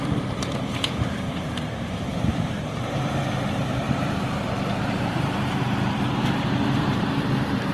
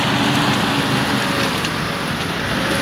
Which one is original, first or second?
second